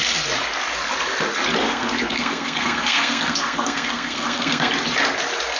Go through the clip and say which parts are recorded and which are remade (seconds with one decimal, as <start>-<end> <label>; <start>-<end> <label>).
0.0-1.6 recorded; 1.6-4.7 remade; 4.7-5.6 recorded

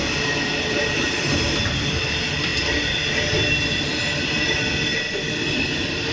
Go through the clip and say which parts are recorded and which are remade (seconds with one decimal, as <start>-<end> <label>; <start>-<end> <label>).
0.0-0.5 recorded; 0.5-1.2 remade; 1.2-6.1 recorded

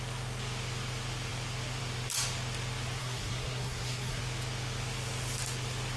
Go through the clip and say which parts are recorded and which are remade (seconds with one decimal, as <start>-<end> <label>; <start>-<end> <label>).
0.0-3.0 recorded; 3.0-4.2 remade; 4.2-6.0 recorded

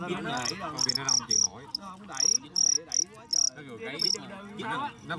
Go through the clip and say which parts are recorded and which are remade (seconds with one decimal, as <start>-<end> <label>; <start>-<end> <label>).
0.0-5.2 recorded

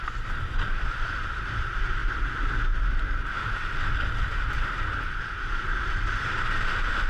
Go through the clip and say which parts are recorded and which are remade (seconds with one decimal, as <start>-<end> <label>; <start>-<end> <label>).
0.0-2.0 remade; 2.0-5.2 recorded; 5.2-7.1 remade

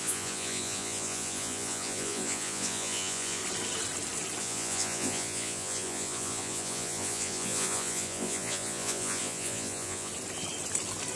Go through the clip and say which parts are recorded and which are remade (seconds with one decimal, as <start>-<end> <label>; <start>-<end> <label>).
0.0-3.4 remade; 3.4-4.4 recorded; 4.4-10.1 remade; 10.1-11.2 recorded